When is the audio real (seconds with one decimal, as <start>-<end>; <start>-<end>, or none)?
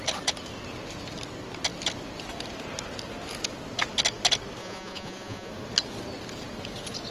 0.0-4.6; 5.5-7.1